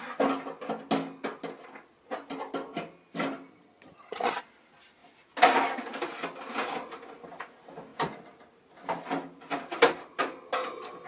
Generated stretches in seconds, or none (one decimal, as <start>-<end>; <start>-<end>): 3.5-4.4